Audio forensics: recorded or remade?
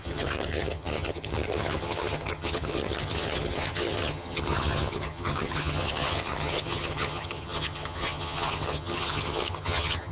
remade